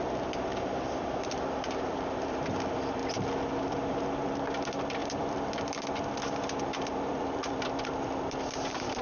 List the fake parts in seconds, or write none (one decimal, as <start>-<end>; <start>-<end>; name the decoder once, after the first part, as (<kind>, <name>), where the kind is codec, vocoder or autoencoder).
0.0-3.0 (vocoder, BigVGAN v2); 3.6-9.0